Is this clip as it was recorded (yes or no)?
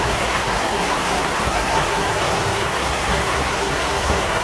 no